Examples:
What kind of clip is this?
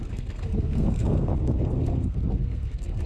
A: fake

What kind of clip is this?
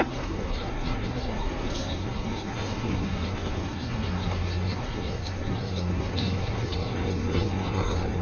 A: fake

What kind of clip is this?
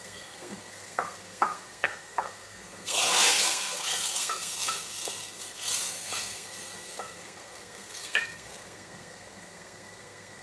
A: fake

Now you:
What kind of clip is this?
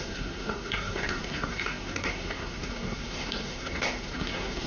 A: fake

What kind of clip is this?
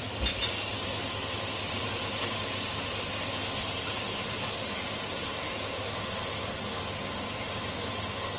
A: real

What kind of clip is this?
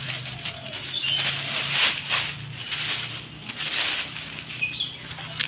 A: real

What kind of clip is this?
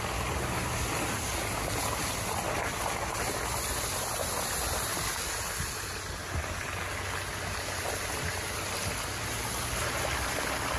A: real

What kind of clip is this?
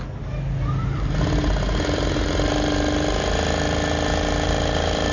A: real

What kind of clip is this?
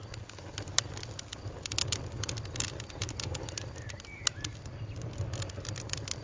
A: real